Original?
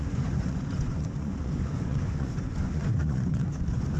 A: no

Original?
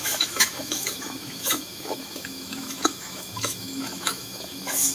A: no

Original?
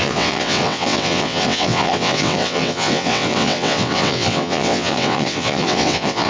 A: no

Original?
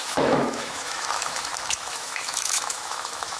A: no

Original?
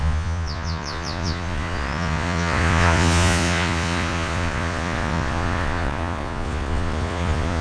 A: no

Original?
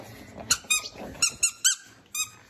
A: yes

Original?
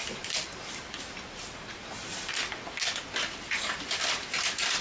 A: yes